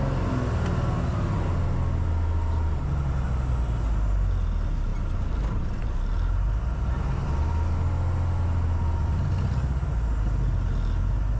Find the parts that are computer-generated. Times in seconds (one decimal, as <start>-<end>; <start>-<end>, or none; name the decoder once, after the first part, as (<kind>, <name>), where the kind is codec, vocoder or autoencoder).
none